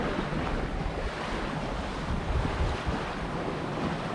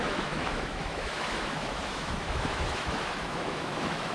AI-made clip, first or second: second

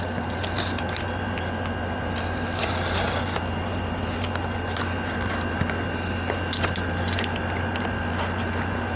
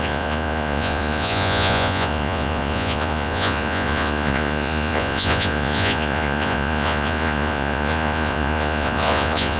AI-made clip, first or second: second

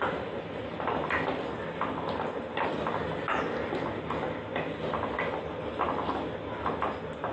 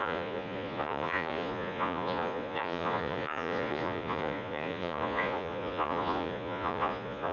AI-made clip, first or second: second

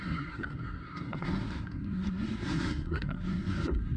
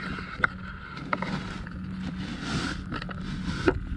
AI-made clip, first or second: first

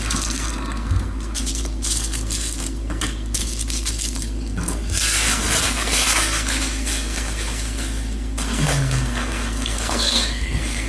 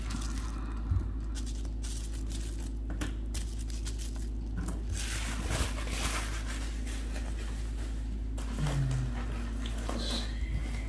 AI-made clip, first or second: first